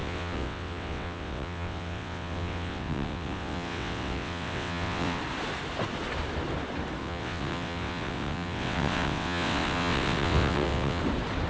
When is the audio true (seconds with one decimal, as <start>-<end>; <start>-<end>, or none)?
5.2-7.0; 11.0-11.5